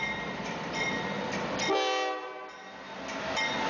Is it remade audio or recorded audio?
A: recorded